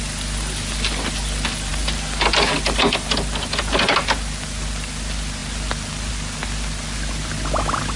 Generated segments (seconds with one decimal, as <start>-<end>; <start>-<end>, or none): none